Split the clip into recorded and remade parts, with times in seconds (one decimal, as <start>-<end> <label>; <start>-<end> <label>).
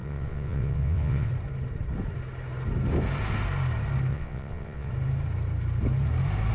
0.0-1.3 remade; 1.3-4.1 recorded; 4.1-4.9 remade; 4.9-6.5 recorded